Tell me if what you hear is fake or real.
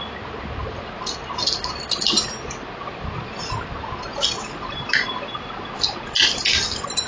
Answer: real